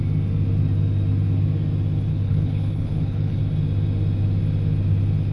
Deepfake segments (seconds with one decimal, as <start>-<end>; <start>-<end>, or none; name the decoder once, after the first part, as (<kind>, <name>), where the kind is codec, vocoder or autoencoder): 2.1-3.4 (codec, HILCodec)